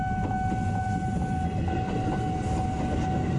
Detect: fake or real real